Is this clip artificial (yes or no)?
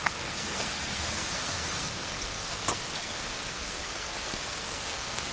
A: yes